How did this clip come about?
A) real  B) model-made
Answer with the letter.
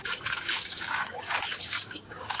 B